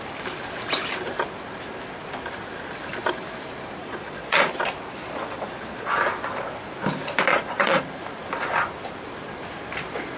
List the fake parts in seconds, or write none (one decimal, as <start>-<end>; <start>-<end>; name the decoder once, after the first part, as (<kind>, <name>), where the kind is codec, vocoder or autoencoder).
3.8-4.6 (vocoder, Vocos); 5.0-6.0; 7.3-7.8